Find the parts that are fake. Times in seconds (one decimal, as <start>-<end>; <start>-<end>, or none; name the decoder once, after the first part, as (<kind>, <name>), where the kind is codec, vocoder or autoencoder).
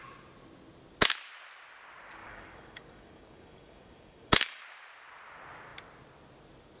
2.2-4.6 (codec, DAC)